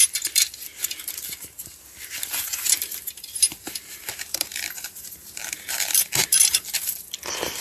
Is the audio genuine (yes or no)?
no